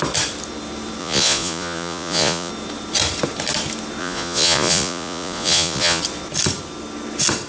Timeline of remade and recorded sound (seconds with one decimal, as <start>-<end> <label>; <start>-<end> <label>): 0.0-1.0 recorded; 1.0-2.5 remade; 2.5-4.0 recorded; 4.0-6.0 remade; 6.0-7.5 recorded

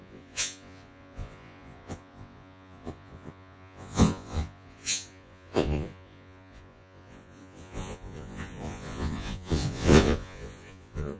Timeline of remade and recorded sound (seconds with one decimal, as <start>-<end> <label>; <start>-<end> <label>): 0.0-11.2 remade

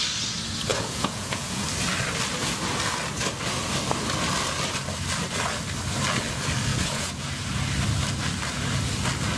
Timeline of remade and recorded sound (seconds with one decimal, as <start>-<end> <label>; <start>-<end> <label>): 0.0-0.7 recorded; 0.7-1.6 remade; 1.6-6.7 recorded; 6.7-7.3 remade; 7.3-9.4 recorded

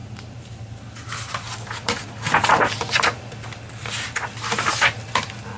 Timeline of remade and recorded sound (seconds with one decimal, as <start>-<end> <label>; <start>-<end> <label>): 0.0-0.6 remade; 0.6-2.4 recorded; 2.4-3.6 remade; 3.6-5.6 recorded

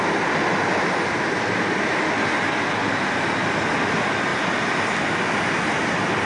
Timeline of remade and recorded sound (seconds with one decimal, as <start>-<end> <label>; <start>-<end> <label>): 0.0-6.3 recorded

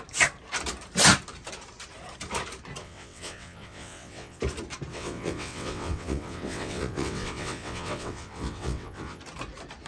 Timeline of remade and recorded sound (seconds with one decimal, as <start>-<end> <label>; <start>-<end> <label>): 0.0-2.8 recorded; 2.8-4.4 remade; 4.4-4.9 recorded; 4.9-9.2 remade; 9.2-9.9 recorded

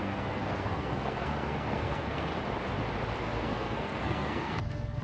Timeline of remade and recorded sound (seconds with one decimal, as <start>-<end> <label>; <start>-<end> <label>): 0.0-2.3 remade; 2.3-3.2 recorded; 3.2-5.0 remade

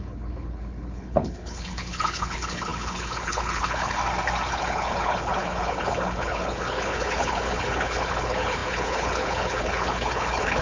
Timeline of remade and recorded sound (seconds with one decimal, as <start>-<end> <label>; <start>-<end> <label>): 0.0-4.0 remade; 4.0-4.5 recorded; 4.5-10.6 remade